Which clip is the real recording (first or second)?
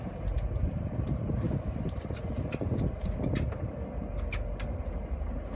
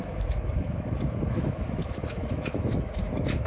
first